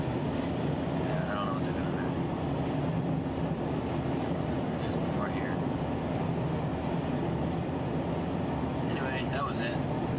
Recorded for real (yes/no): yes